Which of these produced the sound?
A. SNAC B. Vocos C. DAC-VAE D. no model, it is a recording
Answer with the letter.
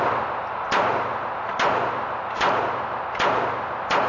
D